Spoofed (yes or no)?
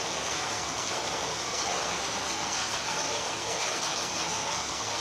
yes